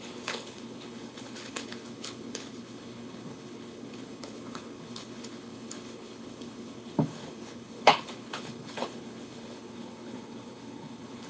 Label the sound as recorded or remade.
remade